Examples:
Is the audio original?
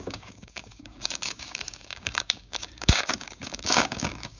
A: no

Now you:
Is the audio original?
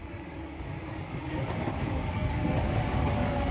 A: no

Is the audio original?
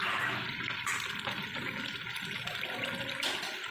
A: yes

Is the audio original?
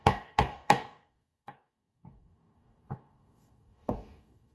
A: no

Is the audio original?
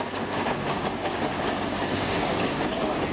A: no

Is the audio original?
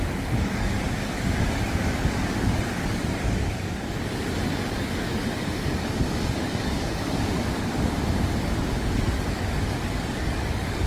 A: no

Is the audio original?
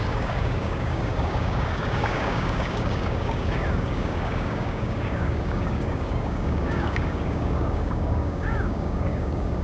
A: no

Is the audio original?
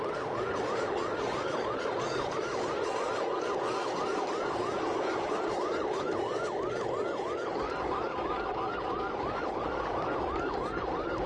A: no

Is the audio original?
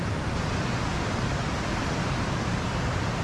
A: yes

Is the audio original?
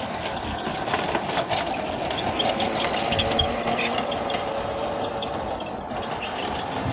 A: yes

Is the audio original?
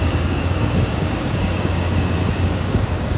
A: no